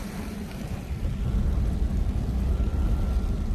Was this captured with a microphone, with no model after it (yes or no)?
yes